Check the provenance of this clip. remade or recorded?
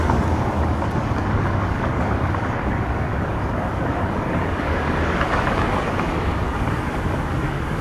remade